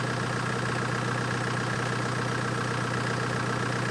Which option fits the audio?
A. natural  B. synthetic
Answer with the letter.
A